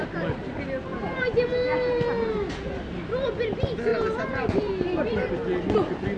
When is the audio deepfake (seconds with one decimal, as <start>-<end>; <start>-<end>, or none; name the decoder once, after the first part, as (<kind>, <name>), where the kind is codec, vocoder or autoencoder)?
0.9-2.3 (vocoder, BigVGAN v2); 3.9-4.7